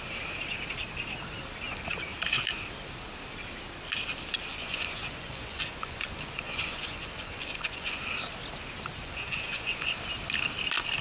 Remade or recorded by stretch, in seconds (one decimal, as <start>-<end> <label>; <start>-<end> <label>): 0.0-4.5 recorded; 4.5-8.0 remade; 8.0-9.0 recorded; 9.0-10.0 remade; 10.0-11.0 recorded